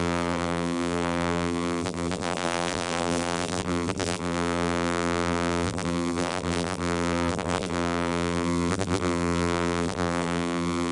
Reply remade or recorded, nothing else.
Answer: remade